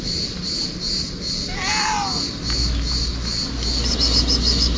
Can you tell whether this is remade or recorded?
recorded